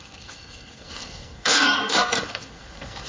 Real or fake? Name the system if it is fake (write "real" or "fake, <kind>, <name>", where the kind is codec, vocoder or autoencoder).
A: fake, codec, SNAC